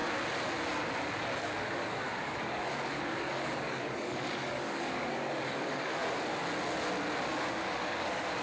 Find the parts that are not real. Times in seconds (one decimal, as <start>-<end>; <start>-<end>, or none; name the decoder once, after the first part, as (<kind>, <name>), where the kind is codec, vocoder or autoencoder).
1.4-6.0 (codec, DAC); 7.5-8.4